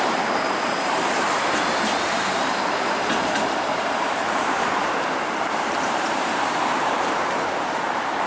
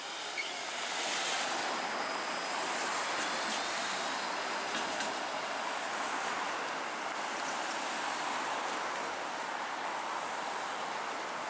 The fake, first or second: first